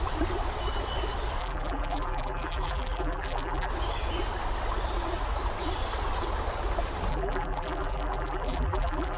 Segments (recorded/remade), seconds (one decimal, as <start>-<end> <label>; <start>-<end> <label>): 0.0-1.4 recorded; 1.4-3.7 remade; 3.7-7.1 recorded; 7.1-9.2 remade